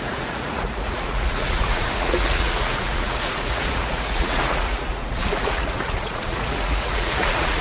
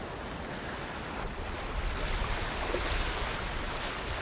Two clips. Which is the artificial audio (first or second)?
first